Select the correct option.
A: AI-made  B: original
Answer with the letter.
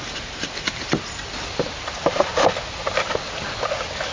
A